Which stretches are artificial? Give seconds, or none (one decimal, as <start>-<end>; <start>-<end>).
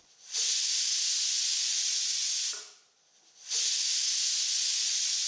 none